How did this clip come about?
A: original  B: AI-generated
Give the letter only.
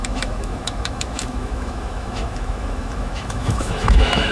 B